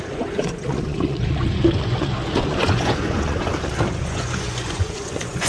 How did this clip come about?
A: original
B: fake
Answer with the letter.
B